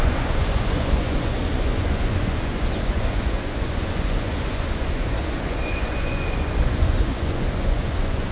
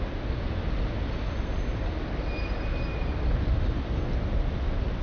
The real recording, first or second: second